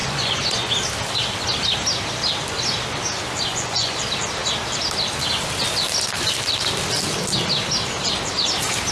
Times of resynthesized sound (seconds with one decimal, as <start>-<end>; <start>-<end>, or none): 0.0-0.7; 3.5-4.0